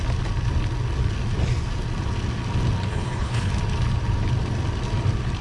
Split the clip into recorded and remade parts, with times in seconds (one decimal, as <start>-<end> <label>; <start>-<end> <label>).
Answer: 0.0-2.9 recorded; 2.9-3.5 remade; 3.5-5.4 recorded